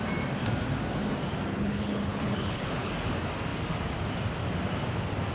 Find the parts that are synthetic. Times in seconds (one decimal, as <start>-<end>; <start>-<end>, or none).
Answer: 1.5-2.9